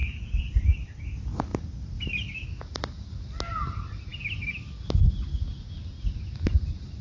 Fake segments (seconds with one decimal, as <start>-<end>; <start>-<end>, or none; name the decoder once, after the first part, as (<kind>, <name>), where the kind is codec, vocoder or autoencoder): none